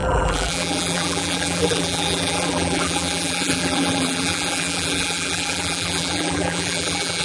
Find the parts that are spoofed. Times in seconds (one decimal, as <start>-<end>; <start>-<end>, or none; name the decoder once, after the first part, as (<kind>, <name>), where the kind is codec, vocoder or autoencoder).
0.0-7.2 (vocoder, BigVGAN v2)